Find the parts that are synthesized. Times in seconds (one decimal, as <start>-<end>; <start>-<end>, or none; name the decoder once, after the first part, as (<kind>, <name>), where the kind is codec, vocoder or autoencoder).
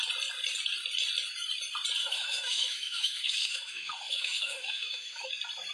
2.0-5.3 (autoencoder, DAC-VAE)